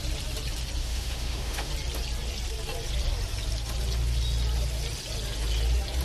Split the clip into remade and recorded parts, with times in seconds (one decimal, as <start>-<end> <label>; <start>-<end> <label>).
0.0-0.8 recorded; 0.8-1.7 remade; 1.7-6.0 recorded